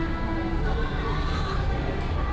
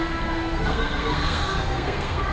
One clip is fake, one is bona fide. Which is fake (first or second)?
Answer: second